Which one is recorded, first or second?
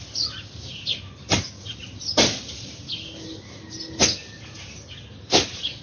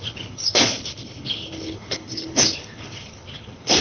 first